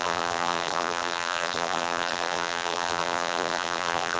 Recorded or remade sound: remade